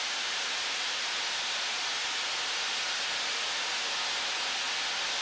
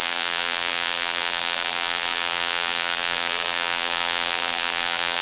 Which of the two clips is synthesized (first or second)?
second